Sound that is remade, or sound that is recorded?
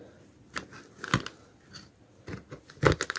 recorded